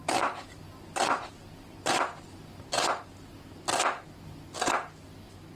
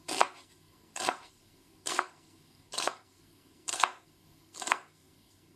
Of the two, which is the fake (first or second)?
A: second